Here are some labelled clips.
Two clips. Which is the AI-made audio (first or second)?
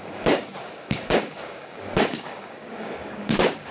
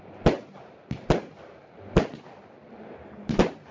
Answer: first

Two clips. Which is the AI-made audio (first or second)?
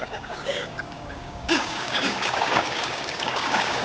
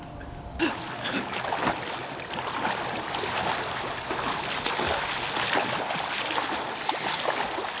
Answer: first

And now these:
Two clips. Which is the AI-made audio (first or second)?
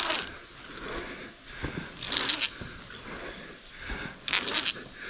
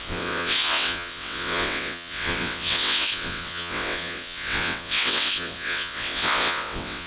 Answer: second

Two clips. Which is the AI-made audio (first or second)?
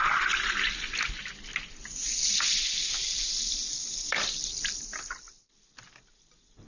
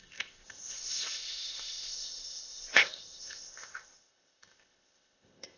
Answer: second